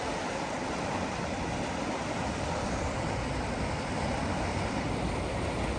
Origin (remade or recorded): recorded